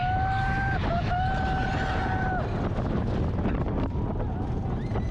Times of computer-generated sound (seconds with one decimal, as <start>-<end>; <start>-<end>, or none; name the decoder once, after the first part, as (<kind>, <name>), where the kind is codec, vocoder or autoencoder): none